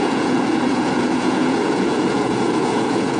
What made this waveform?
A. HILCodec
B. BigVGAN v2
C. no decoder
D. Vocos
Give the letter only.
D